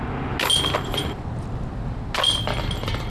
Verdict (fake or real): real